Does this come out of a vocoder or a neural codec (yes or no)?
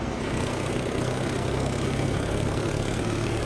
yes